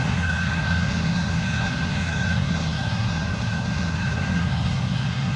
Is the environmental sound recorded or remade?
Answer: remade